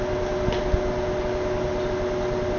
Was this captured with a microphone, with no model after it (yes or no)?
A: yes